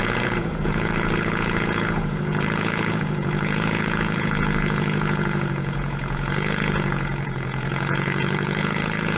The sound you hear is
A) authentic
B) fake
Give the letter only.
B